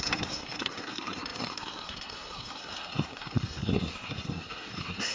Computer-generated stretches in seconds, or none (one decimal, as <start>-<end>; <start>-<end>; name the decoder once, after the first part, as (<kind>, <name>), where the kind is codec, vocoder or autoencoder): 0.0-5.1 (codec, SNAC)